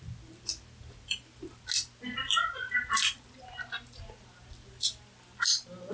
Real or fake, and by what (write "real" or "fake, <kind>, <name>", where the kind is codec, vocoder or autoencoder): real